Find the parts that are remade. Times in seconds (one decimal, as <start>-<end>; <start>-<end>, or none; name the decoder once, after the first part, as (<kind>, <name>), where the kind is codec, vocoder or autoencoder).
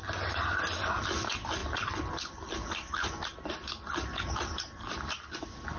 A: none